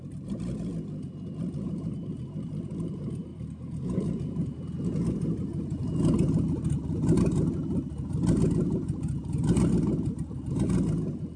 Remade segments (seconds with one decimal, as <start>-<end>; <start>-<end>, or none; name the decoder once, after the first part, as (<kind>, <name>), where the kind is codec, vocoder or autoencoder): 0.0-0.7 (vocoder, BigVGAN v2); 1.4-11.4